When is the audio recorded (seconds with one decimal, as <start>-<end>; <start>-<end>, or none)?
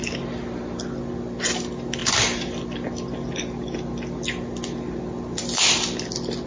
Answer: 0.0-6.5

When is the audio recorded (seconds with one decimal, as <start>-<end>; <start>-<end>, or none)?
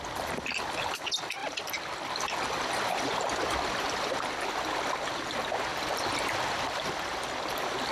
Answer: 0.0-1.4; 4.3-5.7; 7.4-7.9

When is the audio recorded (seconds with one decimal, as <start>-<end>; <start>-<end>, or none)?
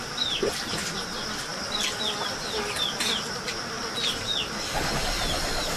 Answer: 0.0-5.8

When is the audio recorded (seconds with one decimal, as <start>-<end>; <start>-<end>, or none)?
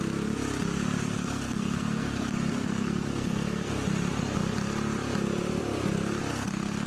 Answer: 0.0-1.0; 3.7-6.3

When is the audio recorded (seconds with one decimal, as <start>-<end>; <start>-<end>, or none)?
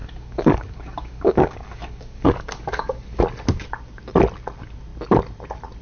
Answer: 3.2-5.8